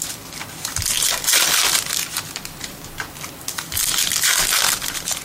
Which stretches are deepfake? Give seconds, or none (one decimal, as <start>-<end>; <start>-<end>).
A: 0.0-1.6; 4.7-5.2